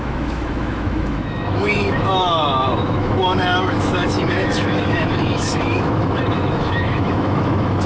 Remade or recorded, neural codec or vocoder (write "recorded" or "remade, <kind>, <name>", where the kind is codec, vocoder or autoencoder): remade, autoencoder, DAC-VAE